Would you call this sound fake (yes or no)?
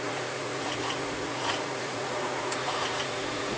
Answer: yes